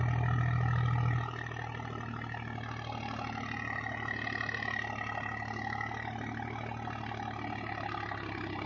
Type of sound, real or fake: real